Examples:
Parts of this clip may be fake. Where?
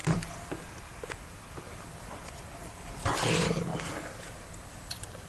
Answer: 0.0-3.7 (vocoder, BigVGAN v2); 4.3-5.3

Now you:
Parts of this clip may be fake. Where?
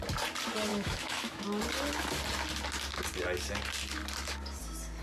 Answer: 0.7-1.4 (autoencoder, DAC-VAE)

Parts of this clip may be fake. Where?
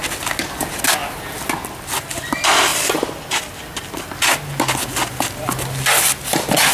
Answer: none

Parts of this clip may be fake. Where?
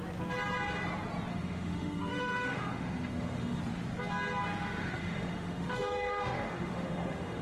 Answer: 1.3-3.6 (autoencoder, DAC-VAE); 4.8-7.4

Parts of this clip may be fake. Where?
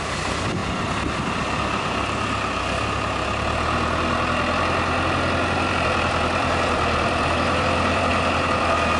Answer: 0.0-0.6 (vocoder, BigVGAN v2); 5.7-8.1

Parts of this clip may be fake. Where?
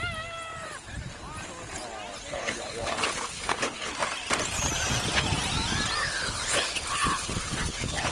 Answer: 2.3-3.9 (codec, HILCodec); 6.0-8.1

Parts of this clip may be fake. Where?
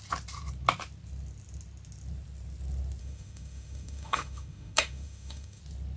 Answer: 3.0-5.6 (autoencoder, DAC-VAE)